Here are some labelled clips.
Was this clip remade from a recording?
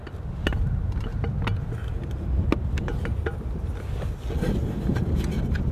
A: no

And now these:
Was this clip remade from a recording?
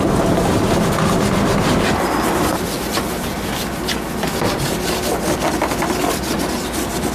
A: no